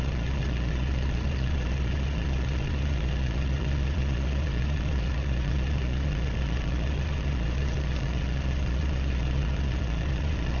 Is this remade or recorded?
remade